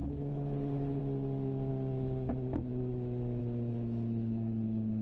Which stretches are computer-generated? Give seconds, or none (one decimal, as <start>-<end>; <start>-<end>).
0.0-1.0; 3.4-5.0